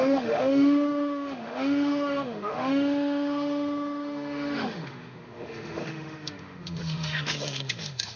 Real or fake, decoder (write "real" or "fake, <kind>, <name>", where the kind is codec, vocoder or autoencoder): fake, autoencoder, DAC-VAE